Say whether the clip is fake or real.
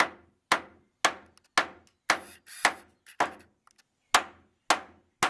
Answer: real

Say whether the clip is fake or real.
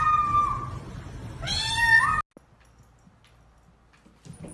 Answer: real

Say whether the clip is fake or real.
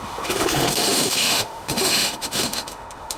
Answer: fake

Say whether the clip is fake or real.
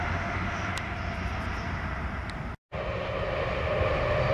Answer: real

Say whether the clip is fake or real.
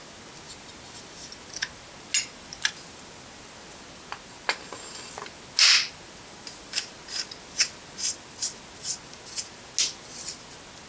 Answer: real